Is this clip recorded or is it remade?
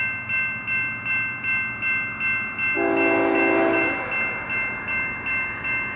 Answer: recorded